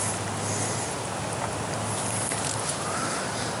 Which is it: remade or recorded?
recorded